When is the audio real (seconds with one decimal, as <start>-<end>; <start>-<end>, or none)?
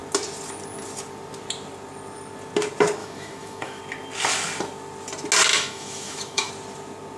0.0-3.0; 3.8-5.5; 6.5-7.2